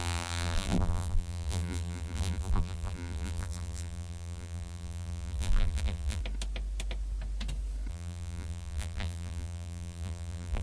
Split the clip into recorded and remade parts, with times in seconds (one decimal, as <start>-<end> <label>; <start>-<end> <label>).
0.0-6.2 remade; 6.2-7.9 recorded; 7.9-10.6 remade